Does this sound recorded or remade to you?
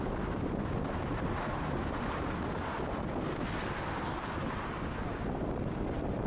recorded